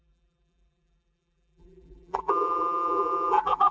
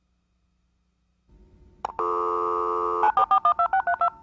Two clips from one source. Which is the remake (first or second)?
first